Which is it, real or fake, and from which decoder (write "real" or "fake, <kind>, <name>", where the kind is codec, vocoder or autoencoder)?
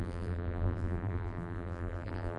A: fake, vocoder, BigVGAN v2